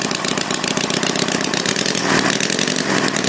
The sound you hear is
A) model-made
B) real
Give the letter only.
B